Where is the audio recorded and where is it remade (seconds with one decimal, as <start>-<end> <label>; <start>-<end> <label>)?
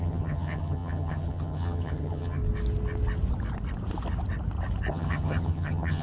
0.0-2.4 remade; 2.4-4.9 recorded; 4.9-6.0 remade